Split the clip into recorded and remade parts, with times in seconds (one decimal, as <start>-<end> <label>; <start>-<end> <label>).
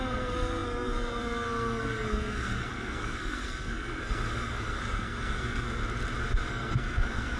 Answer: 0.0-5.8 remade; 5.8-6.5 recorded; 6.5-7.4 remade